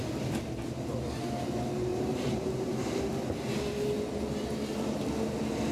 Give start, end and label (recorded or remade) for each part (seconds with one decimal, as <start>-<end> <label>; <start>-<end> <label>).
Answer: 0.0-1.9 recorded; 1.9-3.0 remade; 3.0-5.7 recorded